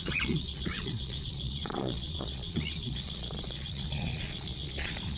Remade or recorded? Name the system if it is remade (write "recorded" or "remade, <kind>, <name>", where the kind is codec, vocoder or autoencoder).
remade, vocoder, Vocos